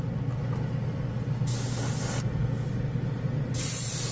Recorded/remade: recorded